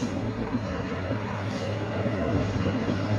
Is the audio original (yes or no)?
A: no